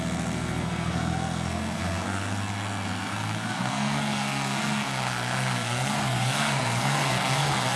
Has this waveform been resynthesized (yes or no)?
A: yes